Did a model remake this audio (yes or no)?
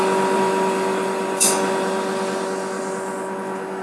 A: no